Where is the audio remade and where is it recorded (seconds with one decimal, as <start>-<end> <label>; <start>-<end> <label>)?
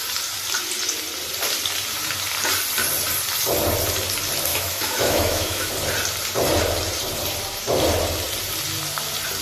0.0-4.5 recorded; 4.5-5.7 remade; 5.7-9.4 recorded